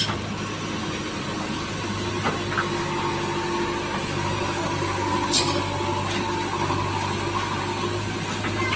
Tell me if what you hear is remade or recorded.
recorded